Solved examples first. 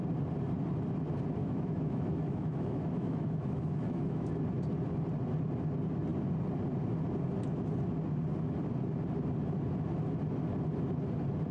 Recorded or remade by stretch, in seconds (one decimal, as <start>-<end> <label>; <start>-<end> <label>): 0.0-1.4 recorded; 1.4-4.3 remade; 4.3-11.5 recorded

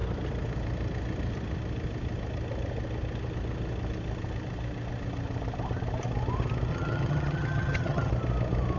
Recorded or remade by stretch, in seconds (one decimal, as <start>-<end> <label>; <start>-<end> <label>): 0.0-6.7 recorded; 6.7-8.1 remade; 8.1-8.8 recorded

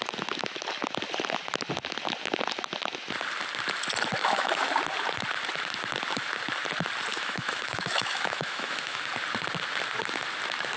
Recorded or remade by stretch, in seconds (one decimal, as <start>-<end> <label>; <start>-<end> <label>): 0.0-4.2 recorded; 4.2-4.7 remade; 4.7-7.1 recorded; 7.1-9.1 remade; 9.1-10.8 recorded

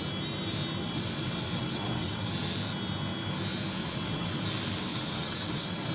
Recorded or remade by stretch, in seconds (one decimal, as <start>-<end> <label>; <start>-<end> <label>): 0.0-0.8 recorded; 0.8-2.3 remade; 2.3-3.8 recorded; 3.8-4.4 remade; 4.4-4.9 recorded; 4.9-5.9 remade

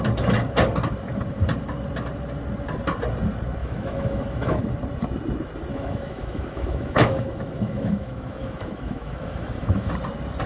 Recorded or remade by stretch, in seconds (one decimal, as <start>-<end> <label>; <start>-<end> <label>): 0.0-3.6 recorded; 3.6-4.6 remade; 4.6-5.7 recorded; 5.7-9.9 remade; 9.9-10.5 recorded